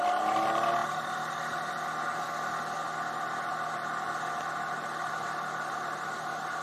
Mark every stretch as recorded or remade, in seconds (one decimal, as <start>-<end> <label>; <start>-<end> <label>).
0.0-6.6 recorded